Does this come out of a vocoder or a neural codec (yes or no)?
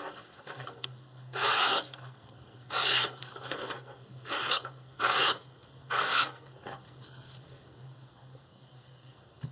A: yes